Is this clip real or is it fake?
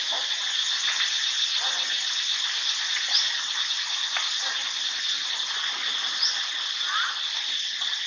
real